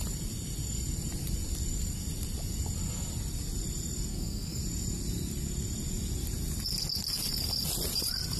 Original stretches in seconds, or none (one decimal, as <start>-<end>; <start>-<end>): 0.0-4.1; 4.6-8.4

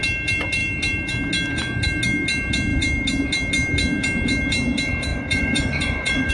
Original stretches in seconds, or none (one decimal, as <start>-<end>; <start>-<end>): 0.0-5.1

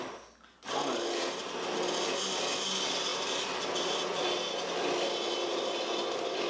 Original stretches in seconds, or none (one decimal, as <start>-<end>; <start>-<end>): 0.0-6.5

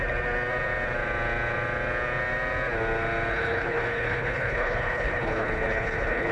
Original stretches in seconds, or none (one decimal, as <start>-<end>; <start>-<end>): 0.0-3.3

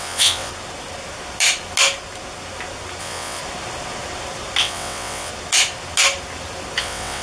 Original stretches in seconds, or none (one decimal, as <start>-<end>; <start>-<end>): 0.5-3.0; 3.4-4.6; 5.3-6.8

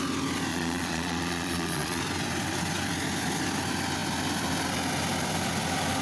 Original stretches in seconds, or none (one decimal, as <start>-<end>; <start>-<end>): 0.0-0.5; 2.0-6.0

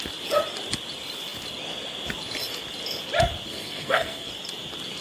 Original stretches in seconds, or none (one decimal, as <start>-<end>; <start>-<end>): 0.0-3.5; 4.3-5.0